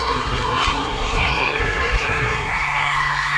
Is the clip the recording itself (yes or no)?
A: no